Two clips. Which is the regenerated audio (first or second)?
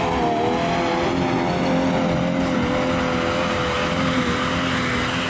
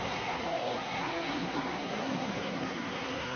second